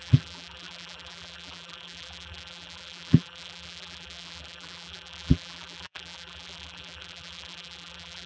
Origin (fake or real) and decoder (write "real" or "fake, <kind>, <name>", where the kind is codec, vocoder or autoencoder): fake, vocoder, BigVGAN v2